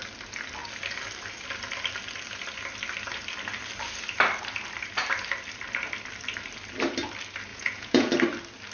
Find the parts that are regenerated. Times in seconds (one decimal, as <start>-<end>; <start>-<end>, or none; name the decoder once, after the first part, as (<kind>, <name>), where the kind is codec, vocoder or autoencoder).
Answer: 7.5-8.1 (vocoder, Vocos)